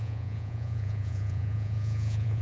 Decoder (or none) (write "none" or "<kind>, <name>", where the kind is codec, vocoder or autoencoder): vocoder, Vocos